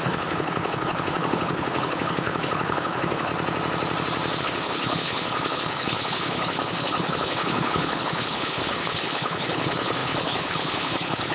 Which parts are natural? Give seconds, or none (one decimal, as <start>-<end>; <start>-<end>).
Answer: 3.3-4.4